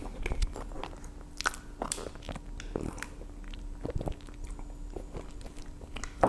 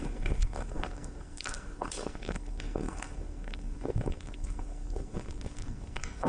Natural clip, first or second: first